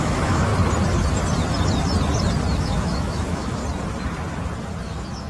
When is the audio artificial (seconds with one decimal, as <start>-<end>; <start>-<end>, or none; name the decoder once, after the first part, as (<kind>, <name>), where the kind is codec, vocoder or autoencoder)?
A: 0.0-0.5 (autoencoder, DAC-VAE); 2.6-3.6; 4.8-5.3